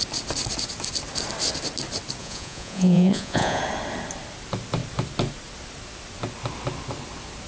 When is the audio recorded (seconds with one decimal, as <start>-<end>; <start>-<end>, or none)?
0.0-2.2; 3.6-7.5